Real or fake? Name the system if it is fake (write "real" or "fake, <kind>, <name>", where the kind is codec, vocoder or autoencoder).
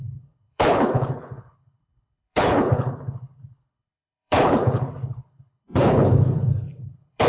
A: fake, codec, HILCodec